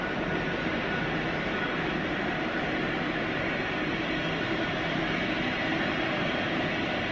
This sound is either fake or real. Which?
fake